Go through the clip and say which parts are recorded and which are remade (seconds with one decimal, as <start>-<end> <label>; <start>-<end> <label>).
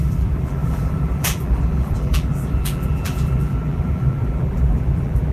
0.0-5.3 remade